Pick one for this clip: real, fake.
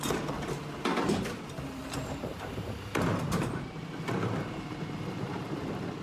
fake